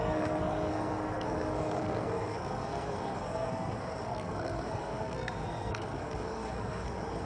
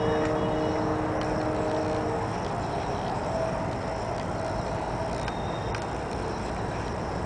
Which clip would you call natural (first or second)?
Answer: second